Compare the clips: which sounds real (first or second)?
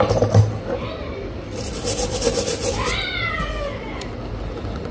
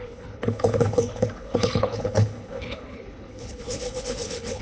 first